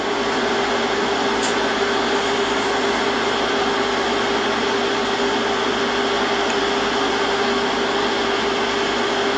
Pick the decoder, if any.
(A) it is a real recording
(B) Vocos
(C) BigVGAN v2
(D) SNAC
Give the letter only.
A